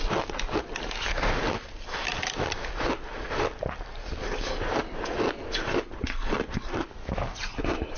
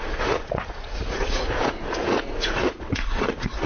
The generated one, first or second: second